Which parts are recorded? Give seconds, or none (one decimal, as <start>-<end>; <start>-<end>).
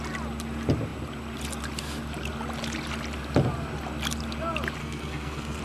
0.0-4.8